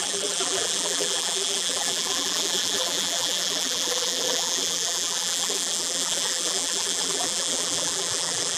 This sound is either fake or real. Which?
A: fake